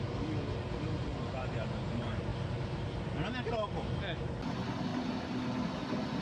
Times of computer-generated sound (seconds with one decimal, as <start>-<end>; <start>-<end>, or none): none

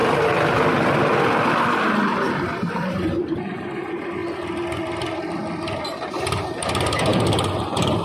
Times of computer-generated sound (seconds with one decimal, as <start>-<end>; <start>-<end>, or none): 2.7-4.2; 5.8-8.0

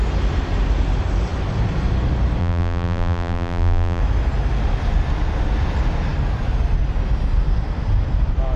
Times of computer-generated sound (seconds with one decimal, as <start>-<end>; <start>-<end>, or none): 2.4-4.0

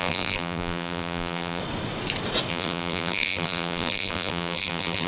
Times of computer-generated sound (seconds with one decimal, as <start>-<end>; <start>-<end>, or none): 0.0-1.6; 2.5-5.1